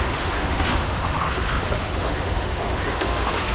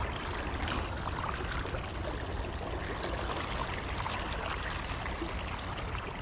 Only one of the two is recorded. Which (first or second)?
second